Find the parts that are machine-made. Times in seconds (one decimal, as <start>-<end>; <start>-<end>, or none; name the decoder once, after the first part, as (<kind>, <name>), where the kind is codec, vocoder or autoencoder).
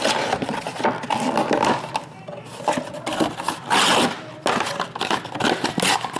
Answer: none